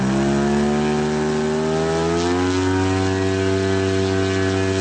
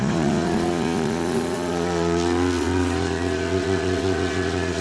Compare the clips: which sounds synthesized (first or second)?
second